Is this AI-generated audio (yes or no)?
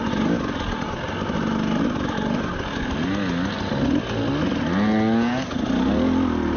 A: no